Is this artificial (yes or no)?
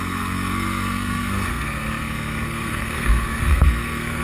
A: yes